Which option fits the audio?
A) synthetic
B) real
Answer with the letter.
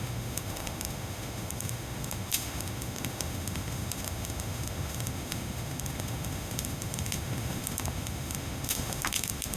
A